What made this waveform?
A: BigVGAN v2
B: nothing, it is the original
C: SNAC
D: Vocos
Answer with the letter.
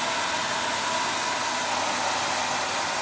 B